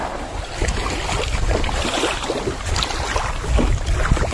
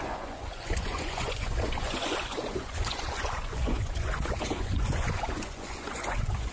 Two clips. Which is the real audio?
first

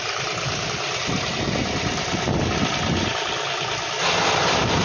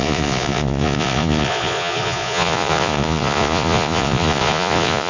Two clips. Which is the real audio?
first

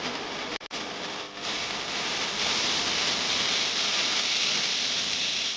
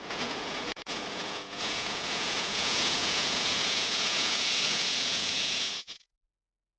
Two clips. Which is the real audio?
first